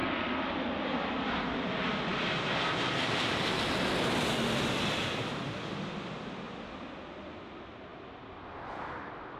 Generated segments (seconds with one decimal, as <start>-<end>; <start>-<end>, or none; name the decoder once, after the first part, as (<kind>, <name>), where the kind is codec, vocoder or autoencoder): none